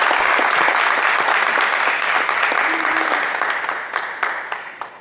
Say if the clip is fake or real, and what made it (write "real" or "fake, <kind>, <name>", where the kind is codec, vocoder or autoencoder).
real